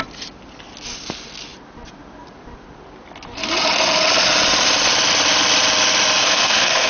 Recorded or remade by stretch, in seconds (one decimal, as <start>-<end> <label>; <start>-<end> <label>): 0.0-6.2 recorded; 6.2-6.9 remade